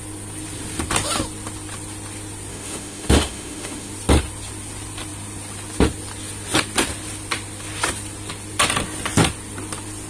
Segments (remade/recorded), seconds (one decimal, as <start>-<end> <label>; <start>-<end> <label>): 0.0-2.5 recorded; 2.5-3.9 remade; 3.9-10.1 recorded